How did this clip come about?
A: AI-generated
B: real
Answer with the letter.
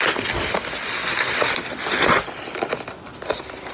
B